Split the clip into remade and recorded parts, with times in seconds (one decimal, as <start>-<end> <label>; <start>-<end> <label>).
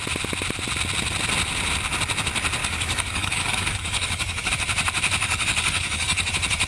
0.0-2.6 recorded; 2.6-4.5 remade; 4.5-5.2 recorded; 5.2-6.3 remade; 6.3-6.7 recorded